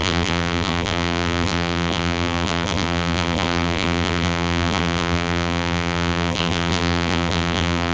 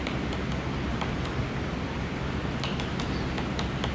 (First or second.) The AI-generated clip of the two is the first